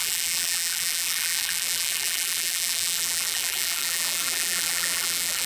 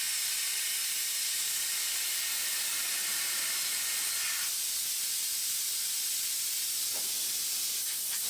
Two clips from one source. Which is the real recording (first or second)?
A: second